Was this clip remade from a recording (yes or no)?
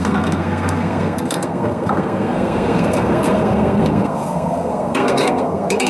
yes